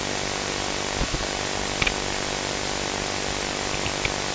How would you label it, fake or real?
real